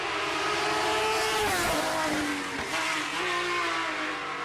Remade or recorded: recorded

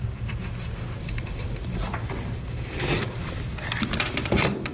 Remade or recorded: remade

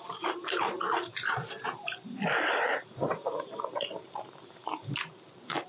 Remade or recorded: remade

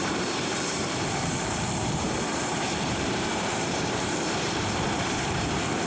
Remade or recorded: remade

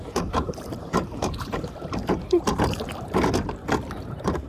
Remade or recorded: remade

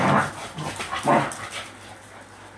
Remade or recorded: recorded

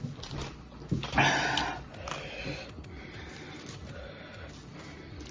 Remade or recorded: recorded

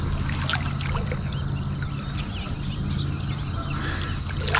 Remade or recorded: recorded